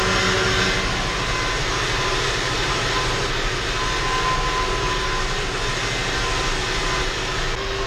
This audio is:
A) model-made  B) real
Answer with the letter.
B